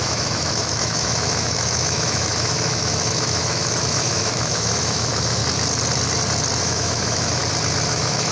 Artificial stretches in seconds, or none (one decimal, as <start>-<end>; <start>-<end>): 0.0-5.4; 6.6-7.4; 7.9-8.3